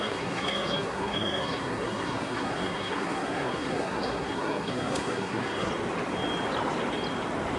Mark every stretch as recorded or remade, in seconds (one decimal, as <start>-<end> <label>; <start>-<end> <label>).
0.0-5.7 remade; 5.7-7.6 recorded